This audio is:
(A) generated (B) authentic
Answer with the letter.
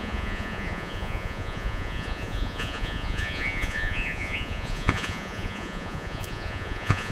A